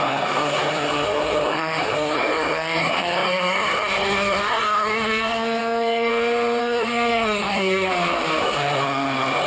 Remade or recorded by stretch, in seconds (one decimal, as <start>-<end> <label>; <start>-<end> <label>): 0.0-6.1 remade; 6.1-6.6 recorded; 6.6-7.9 remade; 7.9-8.4 recorded; 8.4-9.5 remade